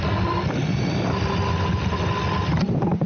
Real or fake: real